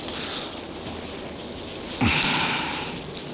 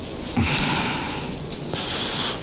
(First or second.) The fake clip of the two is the second